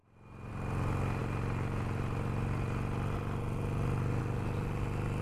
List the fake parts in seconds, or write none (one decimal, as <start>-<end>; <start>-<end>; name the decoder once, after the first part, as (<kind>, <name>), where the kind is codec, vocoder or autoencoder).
none